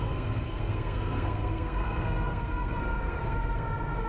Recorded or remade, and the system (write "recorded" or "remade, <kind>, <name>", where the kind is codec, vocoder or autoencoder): remade, codec, SNAC